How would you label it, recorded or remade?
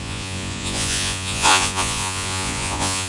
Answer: remade